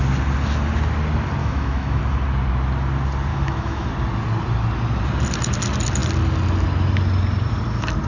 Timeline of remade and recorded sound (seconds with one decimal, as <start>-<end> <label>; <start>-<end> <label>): 0.0-1.4 recorded; 1.4-2.0 remade; 2.0-3.3 recorded; 3.3-3.9 remade; 3.9-8.1 recorded